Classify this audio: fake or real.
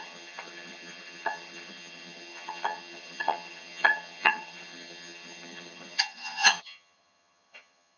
fake